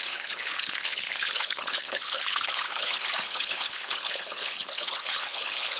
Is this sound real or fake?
fake